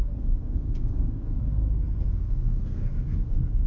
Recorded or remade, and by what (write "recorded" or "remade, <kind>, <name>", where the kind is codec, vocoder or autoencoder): remade, codec, SNAC